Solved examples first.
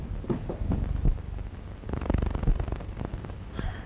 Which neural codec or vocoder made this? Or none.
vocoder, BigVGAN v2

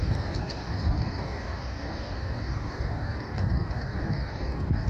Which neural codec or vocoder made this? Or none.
codec, DAC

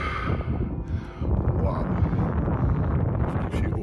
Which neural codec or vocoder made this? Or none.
none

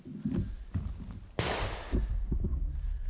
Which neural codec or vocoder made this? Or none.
none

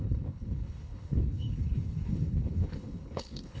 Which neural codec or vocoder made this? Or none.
codec, HILCodec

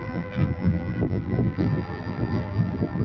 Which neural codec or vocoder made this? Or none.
vocoder, BigVGAN v2